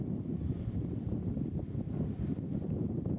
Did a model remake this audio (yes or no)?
yes